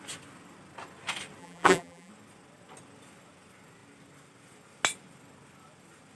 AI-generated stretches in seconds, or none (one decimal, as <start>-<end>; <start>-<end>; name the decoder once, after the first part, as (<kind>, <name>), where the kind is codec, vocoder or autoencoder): 1.4-2.1 (vocoder, BigVGAN v2)